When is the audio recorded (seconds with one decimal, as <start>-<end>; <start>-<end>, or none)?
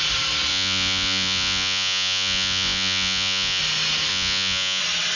0.0-0.5; 3.6-4.1; 4.8-5.2